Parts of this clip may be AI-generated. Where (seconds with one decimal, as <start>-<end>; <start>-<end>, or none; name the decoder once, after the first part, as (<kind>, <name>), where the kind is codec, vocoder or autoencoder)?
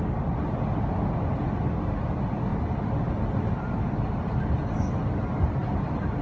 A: 2.5-4.9 (vocoder, BigVGAN v2); 5.6-6.2